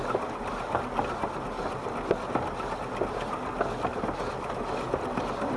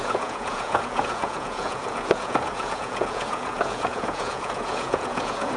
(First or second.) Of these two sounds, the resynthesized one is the second